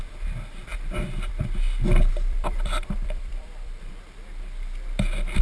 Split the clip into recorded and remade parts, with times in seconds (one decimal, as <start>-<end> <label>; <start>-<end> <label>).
0.0-2.1 recorded; 2.1-3.9 remade; 3.9-5.4 recorded